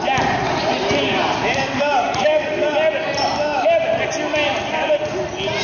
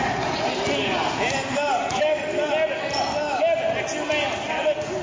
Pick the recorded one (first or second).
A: second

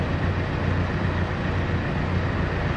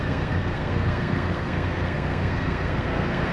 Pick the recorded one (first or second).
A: first